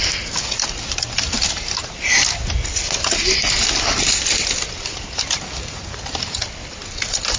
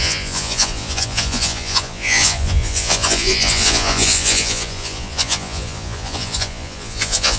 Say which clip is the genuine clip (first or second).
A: first